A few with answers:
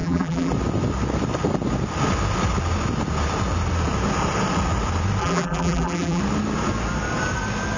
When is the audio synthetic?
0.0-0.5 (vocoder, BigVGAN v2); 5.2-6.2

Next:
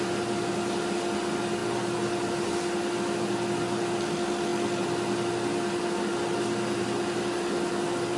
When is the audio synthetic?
none